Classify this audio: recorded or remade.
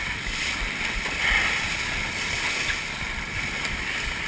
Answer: recorded